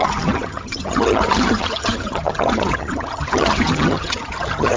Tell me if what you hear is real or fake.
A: fake